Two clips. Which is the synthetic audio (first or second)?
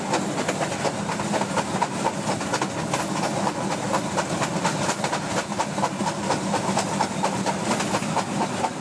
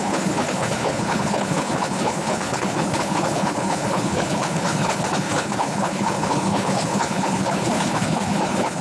second